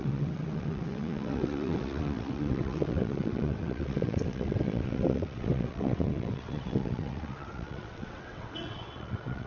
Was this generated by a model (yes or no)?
yes